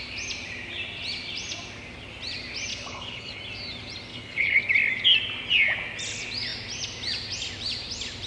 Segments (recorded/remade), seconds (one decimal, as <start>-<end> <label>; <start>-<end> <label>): 0.0-2.7 recorded; 2.7-3.4 remade; 3.4-4.1 recorded; 4.1-4.6 remade; 4.6-8.3 recorded